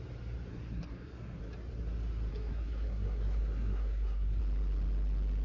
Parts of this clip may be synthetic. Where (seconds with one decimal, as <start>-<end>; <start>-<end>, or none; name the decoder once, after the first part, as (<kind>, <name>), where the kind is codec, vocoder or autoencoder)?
0.5-1.4 (codec, SNAC); 2.3-4.4